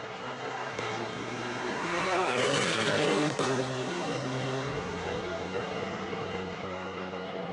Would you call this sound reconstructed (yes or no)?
yes